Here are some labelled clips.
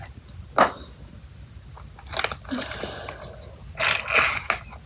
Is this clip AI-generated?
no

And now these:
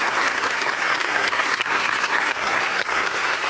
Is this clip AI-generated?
yes